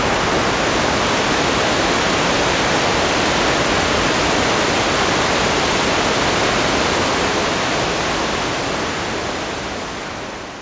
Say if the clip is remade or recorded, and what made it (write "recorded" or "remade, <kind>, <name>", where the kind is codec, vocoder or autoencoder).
recorded